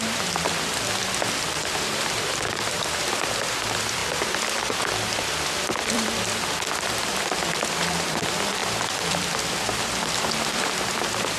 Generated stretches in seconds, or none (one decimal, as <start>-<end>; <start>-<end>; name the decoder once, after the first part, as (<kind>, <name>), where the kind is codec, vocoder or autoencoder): 0.0-4.0 (vocoder, BigVGAN v2); 5.9-11.4

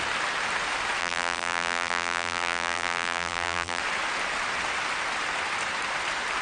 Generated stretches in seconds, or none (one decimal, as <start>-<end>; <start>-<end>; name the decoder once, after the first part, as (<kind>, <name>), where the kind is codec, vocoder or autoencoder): 1.0-3.8 (vocoder, BigVGAN v2)

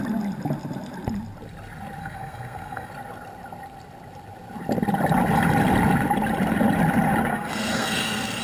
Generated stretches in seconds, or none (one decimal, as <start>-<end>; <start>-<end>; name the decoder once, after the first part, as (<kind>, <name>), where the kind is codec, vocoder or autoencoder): 2.0-2.9 (codec, SNAC); 7.3-8.4

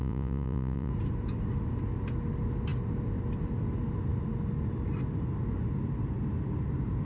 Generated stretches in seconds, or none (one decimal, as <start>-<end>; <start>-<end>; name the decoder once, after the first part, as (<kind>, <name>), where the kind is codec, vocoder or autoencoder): 0.0-0.9 (vocoder, Vocos)

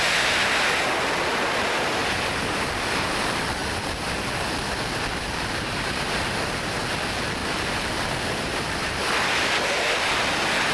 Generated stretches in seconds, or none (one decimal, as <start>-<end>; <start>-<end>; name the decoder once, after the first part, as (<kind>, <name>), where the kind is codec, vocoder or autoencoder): 2.0-3.1 (vocoder, BigVGAN v2); 5.1-6.8; 7.4-9.5

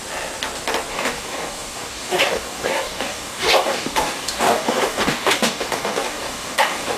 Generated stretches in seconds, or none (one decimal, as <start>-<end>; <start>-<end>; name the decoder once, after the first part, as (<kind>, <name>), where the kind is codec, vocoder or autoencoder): 0.9-7.0 (codec, DAC)